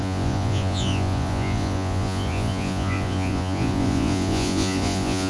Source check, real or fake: fake